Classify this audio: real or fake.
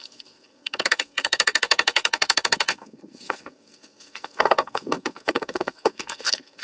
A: fake